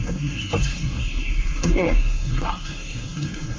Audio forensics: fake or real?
fake